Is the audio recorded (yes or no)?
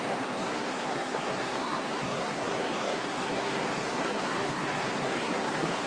no